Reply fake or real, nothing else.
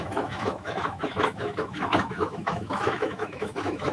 fake